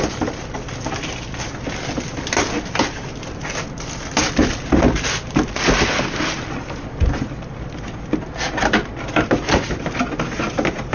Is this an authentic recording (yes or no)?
yes